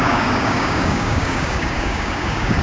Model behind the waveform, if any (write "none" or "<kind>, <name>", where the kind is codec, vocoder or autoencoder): codec, DAC